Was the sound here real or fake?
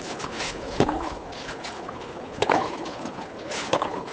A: fake